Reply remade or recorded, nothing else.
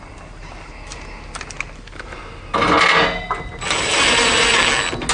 recorded